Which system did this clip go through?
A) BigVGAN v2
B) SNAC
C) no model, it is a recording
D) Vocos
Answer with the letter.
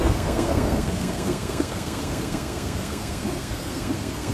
B